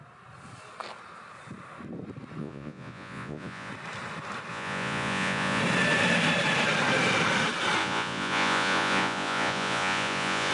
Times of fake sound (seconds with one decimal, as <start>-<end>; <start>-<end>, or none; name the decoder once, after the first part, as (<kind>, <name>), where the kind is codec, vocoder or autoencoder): 2.4-3.7 (vocoder, Vocos); 4.5-5.6; 7.8-10.5